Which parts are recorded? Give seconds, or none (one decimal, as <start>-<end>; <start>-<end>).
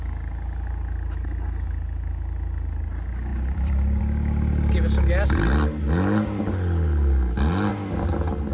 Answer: 0.0-3.3; 4.0-8.5